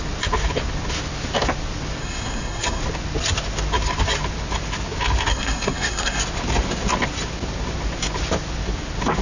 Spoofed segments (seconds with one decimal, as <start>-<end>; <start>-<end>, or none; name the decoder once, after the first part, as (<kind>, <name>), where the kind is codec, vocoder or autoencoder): 2.0-2.8 (codec, SNAC); 5.3-6.2